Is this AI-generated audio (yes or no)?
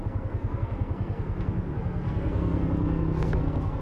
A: yes